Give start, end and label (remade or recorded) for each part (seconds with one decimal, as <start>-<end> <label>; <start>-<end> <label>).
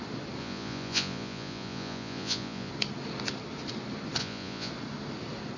0.0-0.4 recorded; 0.4-2.7 remade; 2.7-4.2 recorded; 4.2-4.7 remade; 4.7-5.6 recorded